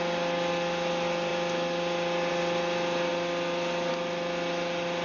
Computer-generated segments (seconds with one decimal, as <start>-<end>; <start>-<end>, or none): none